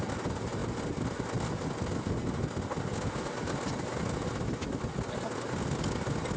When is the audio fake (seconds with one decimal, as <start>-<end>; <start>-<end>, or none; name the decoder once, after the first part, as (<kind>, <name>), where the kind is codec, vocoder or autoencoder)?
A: none